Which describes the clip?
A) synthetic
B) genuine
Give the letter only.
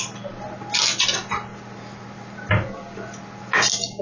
B